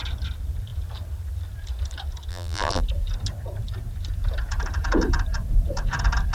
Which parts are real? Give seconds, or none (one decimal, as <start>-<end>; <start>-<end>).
0.0-2.3; 2.8-6.3